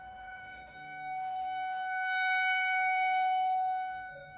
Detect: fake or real fake